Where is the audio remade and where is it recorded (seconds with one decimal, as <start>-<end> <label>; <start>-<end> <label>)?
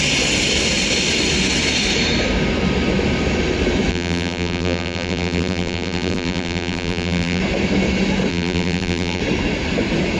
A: 0.0-3.9 recorded; 3.9-7.4 remade; 7.4-8.3 recorded; 8.3-9.2 remade; 9.2-10.2 recorded